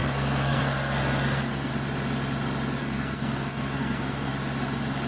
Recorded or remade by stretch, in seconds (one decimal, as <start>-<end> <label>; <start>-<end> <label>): 0.0-1.7 remade; 1.7-2.8 recorded; 2.8-4.3 remade; 4.3-5.1 recorded